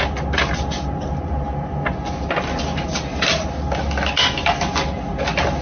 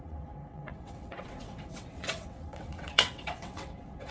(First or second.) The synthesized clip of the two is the second